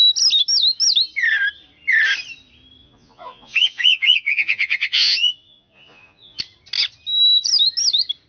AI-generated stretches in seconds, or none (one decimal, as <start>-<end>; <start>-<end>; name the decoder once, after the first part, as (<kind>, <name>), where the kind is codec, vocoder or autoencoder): 2.8-6.4 (vocoder, Vocos)